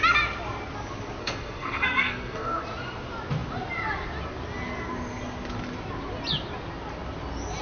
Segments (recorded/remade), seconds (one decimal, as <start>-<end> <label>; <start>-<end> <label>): 0.0-1.2 recorded; 1.2-2.6 remade; 2.6-7.6 recorded